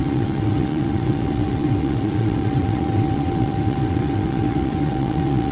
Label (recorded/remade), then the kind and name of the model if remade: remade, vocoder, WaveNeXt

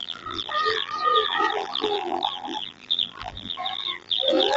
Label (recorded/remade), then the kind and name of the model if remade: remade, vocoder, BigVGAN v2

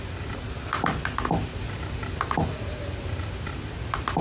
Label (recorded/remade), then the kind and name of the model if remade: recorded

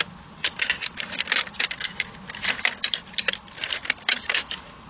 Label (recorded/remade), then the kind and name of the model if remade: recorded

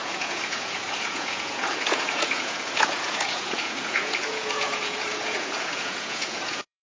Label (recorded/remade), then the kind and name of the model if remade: remade, vocoder, Vocos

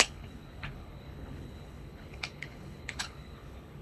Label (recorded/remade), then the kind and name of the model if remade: remade, codec, HILCodec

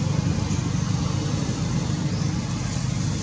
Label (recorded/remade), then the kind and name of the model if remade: recorded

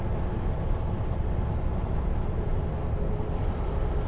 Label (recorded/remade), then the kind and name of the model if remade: recorded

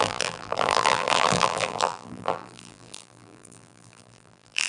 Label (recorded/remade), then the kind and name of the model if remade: remade, vocoder, BigVGAN v2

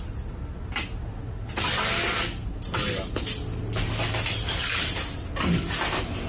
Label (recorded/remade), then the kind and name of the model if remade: recorded